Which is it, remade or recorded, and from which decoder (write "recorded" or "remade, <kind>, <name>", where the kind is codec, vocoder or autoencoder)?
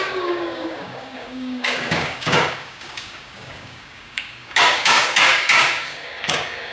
remade, codec, DAC